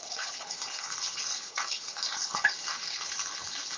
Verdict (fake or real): fake